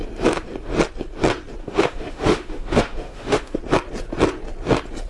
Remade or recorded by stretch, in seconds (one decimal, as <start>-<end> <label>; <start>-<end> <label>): 0.0-1.6 recorded; 1.6-3.6 remade; 3.6-5.1 recorded